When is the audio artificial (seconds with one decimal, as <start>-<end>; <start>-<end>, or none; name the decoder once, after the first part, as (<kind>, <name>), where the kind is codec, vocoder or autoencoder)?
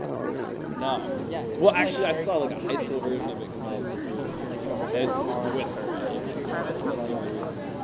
0.0-0.8 (vocoder, HiFi-GAN)